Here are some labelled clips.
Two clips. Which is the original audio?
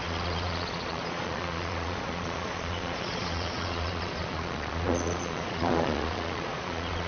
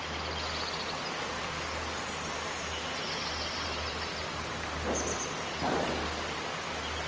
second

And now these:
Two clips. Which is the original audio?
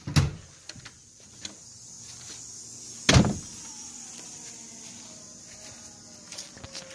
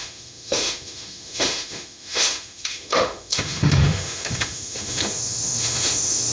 first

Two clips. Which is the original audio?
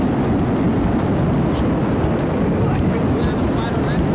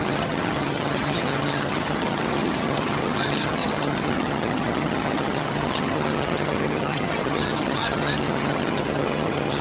first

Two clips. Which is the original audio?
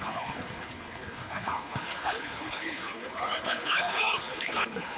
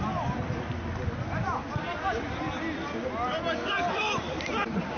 second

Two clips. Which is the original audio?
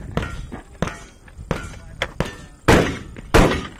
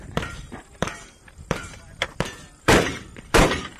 first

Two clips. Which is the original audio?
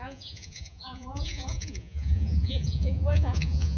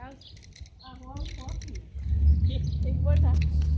second